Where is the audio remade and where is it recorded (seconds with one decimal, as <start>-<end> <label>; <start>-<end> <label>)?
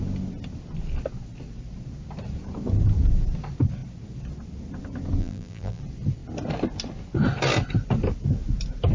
0.0-5.2 recorded; 5.2-5.8 remade; 5.8-8.9 recorded